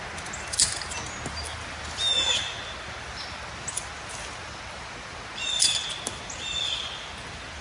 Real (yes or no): yes